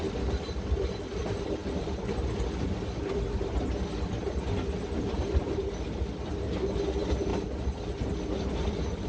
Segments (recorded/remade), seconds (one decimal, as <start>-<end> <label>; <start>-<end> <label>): 0.0-9.1 recorded